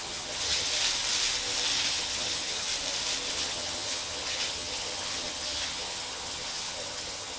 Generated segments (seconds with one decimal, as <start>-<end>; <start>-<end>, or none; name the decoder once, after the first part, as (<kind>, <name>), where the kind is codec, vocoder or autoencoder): 0.0-0.7 (vocoder, HiFi-GAN); 1.9-2.7; 3.3-7.4